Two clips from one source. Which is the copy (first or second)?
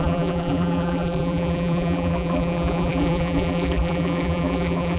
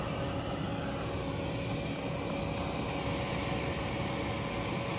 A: first